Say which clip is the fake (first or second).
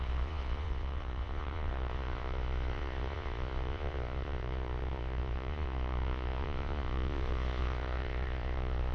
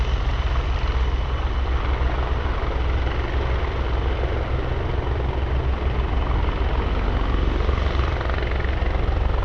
first